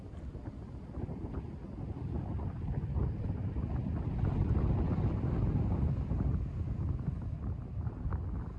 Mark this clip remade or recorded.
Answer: recorded